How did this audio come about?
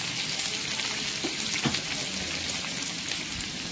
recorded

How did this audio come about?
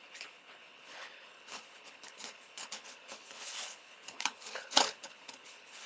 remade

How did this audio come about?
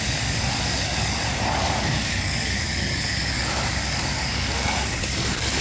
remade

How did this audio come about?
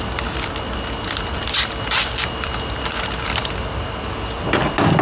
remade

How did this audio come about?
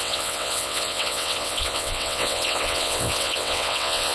remade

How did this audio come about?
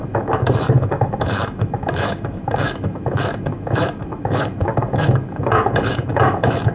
remade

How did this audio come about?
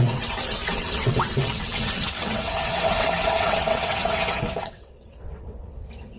remade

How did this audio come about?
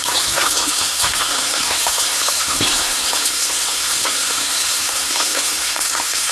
remade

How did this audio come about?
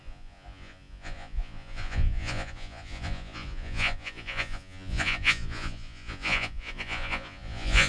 remade